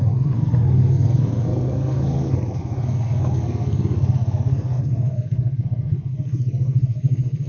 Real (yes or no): no